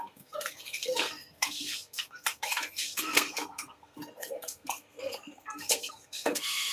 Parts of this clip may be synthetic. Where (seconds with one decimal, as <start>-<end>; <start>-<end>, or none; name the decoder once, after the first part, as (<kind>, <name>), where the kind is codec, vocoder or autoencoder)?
0.0-6.7 (codec, SNAC)